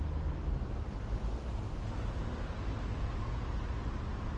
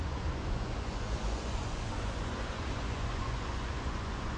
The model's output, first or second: second